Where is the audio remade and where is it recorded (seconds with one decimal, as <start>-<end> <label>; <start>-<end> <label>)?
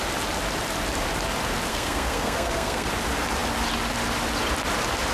0.0-1.7 recorded; 1.7-2.9 remade; 2.9-5.1 recorded